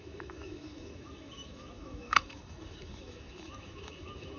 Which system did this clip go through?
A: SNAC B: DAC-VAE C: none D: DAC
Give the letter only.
B